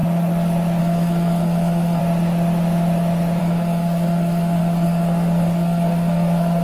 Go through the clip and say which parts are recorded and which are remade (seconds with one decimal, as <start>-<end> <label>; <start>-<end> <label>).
0.0-0.8 recorded; 0.8-2.0 remade; 2.0-3.4 recorded; 3.4-6.6 remade